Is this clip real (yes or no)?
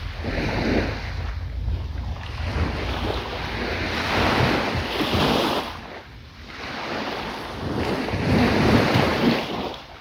yes